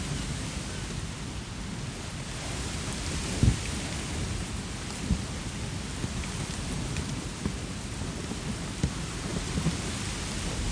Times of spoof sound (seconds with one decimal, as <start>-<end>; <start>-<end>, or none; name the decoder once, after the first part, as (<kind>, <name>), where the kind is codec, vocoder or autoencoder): none